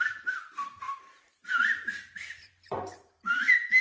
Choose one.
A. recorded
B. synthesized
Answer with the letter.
B